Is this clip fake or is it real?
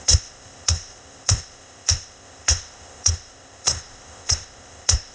fake